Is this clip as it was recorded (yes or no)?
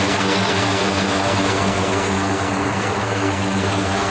no